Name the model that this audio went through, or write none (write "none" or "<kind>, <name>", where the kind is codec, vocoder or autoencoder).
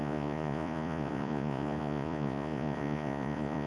vocoder, Vocos